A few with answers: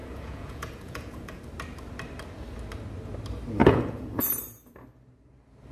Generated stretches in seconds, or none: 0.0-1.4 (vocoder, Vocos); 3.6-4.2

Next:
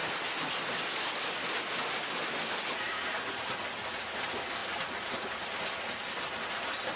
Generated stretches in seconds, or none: none

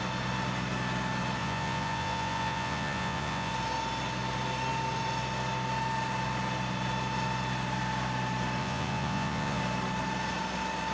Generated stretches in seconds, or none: 1.4-3.5 (vocoder, Vocos); 8.6-9.6

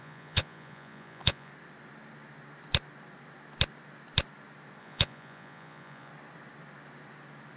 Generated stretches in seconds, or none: 0.0-1.5 (vocoder, Vocos); 4.8-6.1

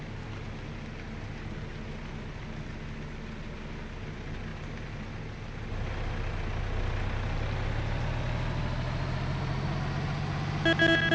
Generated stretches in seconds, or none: none

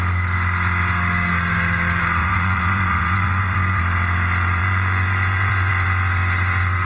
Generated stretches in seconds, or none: 2.2-3.8 (vocoder, Vocos); 4.6-5.7

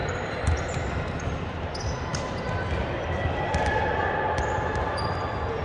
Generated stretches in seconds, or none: none

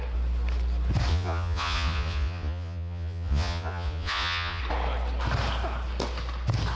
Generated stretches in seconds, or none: 1.1-4.6 (vocoder, Vocos)